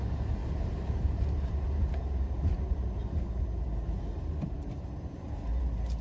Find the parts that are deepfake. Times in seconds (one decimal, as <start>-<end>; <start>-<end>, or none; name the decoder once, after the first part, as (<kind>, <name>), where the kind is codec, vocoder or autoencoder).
0.4-4.0 (vocoder, BigVGAN v2)